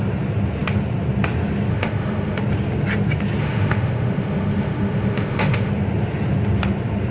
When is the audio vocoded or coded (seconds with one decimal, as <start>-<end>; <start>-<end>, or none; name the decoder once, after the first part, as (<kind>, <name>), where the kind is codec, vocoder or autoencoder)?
1.7-2.4 (autoencoder, DAC-VAE); 3.4-5.7